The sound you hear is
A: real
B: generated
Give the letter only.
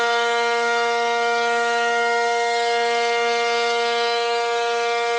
B